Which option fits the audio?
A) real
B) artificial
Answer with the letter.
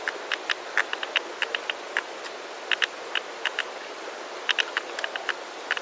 A